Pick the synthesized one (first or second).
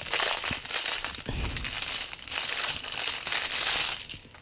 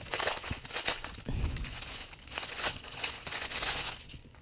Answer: second